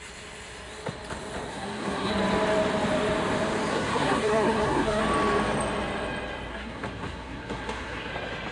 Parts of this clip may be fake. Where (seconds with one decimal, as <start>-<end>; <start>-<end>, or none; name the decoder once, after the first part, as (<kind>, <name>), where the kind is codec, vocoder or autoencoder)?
1.5-2.1 (codec, SNAC); 3.7-5.0; 6.5-8.1

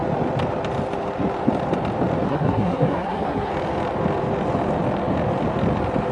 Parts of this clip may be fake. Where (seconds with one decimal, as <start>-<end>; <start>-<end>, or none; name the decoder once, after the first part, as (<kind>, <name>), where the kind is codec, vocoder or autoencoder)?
2.3-3.5 (codec, SNAC)

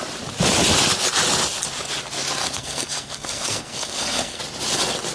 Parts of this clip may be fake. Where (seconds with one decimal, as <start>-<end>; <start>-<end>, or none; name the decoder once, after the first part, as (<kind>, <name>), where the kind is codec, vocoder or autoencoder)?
2.4-4.4 (codec, SNAC)

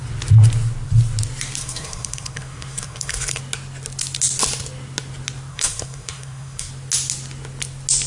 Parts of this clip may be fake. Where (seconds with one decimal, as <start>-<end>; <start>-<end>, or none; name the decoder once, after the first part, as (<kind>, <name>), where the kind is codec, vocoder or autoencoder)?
1.6-3.4 (codec, SNAC); 5.5-6.7

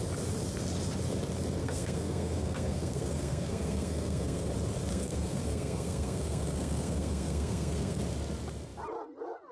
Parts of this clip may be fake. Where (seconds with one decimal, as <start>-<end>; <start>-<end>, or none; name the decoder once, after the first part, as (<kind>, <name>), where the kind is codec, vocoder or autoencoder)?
1.6-4.5 (codec, SNAC); 4.9-8.0